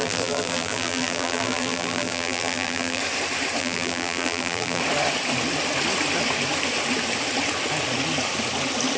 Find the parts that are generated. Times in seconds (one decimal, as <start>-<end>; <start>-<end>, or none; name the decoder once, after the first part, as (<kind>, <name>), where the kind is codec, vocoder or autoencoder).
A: 0.0-3.0 (vocoder, BigVGAN v2); 3.6-4.8